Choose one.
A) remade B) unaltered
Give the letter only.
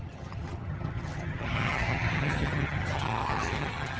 A